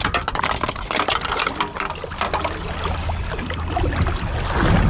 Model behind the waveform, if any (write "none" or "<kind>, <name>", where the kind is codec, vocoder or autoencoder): none